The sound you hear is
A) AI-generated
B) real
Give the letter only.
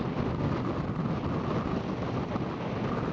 B